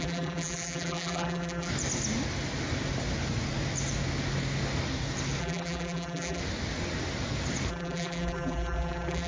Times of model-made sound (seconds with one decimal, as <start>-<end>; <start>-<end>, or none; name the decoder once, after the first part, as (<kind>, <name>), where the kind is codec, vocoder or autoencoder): 0.0-1.7 (vocoder, BigVGAN v2); 5.4-6.4; 7.7-9.3

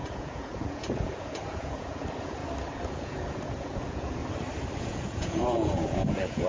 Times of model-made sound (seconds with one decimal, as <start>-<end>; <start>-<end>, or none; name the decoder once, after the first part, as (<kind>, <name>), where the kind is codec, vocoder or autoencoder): 0.0-2.4 (vocoder, Vocos); 2.9-4.2; 4.8-6.5

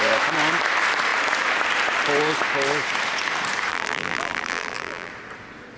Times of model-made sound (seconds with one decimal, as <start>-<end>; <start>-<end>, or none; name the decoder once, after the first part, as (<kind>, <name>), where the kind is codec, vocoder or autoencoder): 3.7-5.1 (vocoder, BigVGAN v2)

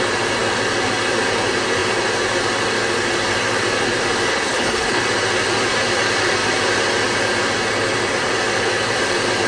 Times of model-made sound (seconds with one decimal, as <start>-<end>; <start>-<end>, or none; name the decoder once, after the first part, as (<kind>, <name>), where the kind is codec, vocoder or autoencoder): 4.3-5.0 (codec, HILCodec)

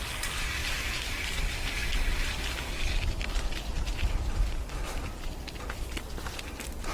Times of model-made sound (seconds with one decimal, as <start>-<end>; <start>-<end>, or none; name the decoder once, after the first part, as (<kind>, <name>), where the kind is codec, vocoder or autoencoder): 0.6-1.4 (vocoder, BigVGAN v2)

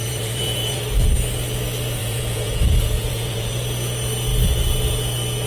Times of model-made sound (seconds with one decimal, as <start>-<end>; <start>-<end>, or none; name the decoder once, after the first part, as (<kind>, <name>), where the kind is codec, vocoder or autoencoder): 0.0-0.8 (vocoder, Vocos); 2.0-3.5

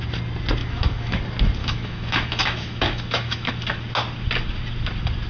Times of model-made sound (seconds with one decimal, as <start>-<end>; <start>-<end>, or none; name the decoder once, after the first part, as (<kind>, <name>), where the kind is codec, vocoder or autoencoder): 0.6-1.2 (autoencoder, DAC-VAE); 1.6-3.5